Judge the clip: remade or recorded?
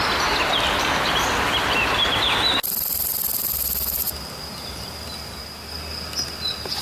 recorded